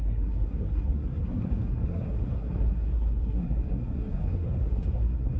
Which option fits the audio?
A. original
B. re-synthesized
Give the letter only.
B